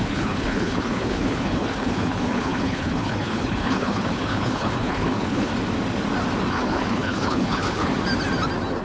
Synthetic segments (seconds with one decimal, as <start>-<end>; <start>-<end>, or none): 0.0-5.5; 6.5-7.9